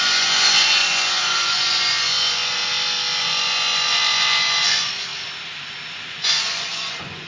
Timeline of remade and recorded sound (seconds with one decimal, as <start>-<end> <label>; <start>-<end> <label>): 0.0-2.6 remade; 2.6-3.2 recorded; 3.2-5.1 remade; 5.1-6.1 recorded; 6.1-7.3 remade